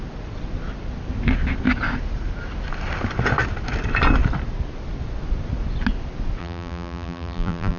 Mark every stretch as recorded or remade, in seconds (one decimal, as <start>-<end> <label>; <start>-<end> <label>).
0.0-6.4 recorded; 6.4-7.8 remade